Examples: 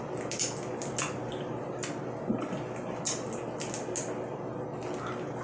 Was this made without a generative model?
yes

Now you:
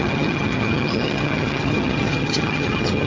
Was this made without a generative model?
no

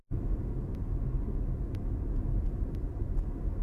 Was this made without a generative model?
yes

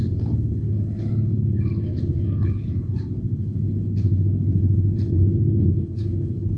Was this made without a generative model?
no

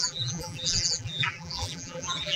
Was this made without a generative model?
no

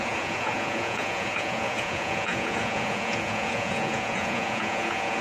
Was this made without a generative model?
no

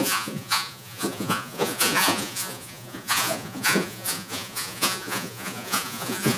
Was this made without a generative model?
no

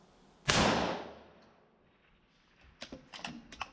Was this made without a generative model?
yes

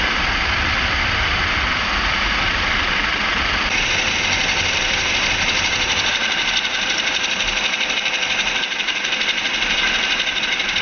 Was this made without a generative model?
no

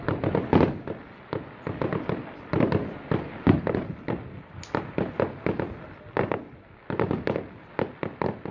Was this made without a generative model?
yes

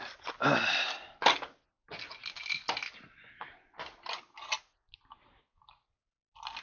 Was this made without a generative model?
yes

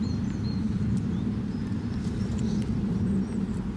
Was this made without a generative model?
no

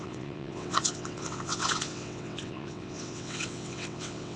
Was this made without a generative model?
no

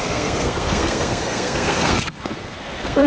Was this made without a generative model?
no